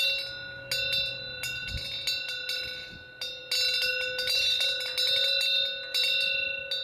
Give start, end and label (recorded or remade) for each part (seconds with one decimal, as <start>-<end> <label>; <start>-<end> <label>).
0.0-6.8 recorded